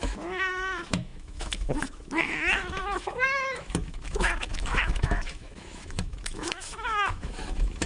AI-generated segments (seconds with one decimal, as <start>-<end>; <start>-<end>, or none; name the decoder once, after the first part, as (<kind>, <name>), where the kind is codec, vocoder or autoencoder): 0.0-7.9 (autoencoder, DAC-VAE)